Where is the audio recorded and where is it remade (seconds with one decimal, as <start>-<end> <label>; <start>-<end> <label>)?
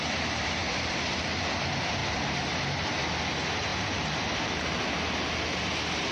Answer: 0.0-6.1 recorded